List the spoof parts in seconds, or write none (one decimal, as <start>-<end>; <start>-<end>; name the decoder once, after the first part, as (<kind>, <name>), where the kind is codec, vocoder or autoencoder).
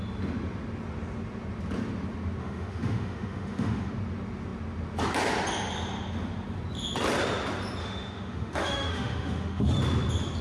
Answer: 2.4-3.9 (autoencoder, DAC-VAE); 7.8-9.8